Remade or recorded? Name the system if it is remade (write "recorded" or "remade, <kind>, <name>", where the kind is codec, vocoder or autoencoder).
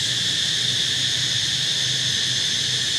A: recorded